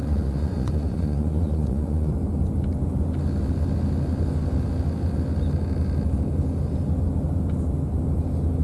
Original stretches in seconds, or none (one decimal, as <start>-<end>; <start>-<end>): 2.1-8.6